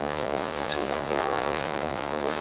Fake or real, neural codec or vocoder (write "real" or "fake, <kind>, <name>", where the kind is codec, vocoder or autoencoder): fake, vocoder, Vocos